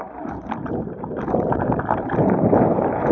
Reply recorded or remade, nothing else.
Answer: remade